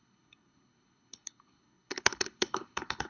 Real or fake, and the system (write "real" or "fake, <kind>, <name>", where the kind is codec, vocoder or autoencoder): fake, codec, HILCodec